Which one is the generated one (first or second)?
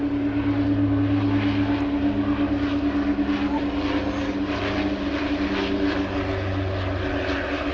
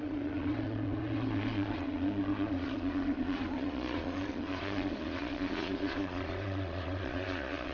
second